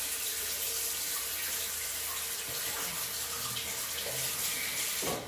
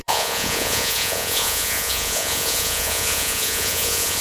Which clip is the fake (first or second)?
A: second